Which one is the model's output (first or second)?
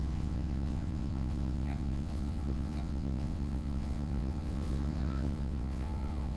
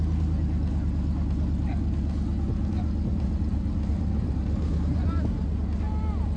first